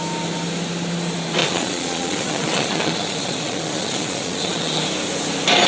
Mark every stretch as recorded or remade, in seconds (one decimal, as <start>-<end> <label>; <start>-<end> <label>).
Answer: 0.0-1.4 recorded; 1.4-4.8 remade; 4.8-5.7 recorded